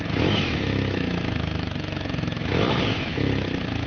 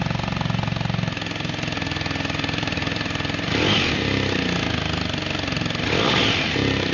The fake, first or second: first